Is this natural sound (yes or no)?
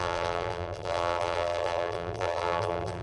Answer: no